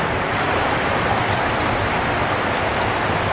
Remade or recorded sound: recorded